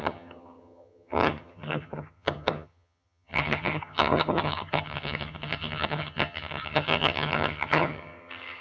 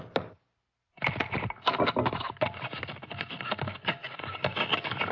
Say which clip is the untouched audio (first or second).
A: second